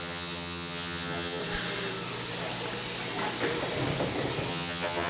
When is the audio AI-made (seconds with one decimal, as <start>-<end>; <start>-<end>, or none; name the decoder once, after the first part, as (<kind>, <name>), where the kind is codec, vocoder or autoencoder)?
0.0-1.4 (vocoder, HiFi-GAN); 4.5-5.1